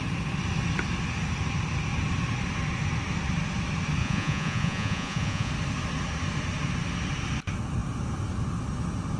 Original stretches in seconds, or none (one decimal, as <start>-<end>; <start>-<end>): 0.0-4.0; 5.5-9.2